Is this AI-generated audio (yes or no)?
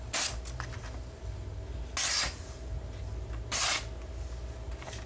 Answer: no